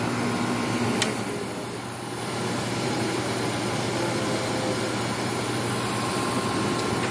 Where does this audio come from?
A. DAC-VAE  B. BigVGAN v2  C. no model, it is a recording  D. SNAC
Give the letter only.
C